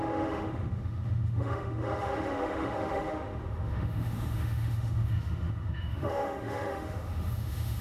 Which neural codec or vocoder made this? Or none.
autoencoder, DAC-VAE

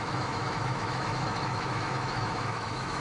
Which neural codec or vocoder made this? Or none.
autoencoder, DAC-VAE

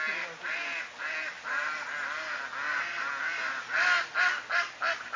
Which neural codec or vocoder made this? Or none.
none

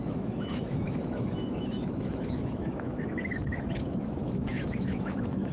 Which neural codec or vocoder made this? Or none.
autoencoder, DAC-VAE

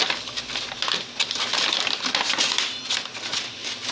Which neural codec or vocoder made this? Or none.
none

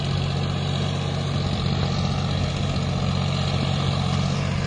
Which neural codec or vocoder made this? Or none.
none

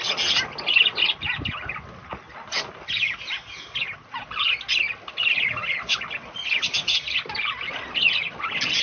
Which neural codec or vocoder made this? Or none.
none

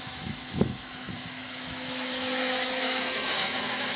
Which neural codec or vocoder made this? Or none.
autoencoder, DAC-VAE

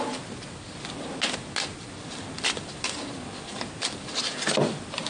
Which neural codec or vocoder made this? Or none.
none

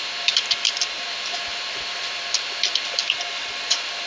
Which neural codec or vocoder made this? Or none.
none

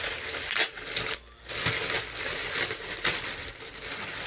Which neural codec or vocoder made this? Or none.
none